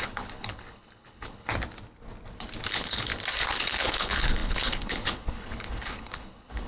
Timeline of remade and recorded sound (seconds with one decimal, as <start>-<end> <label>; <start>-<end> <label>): 0.0-1.5 remade; 1.5-2.7 recorded; 2.7-3.1 remade; 3.1-3.6 recorded; 3.6-6.7 remade